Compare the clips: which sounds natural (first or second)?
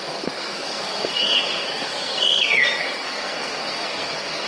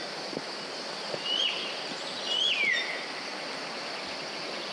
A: second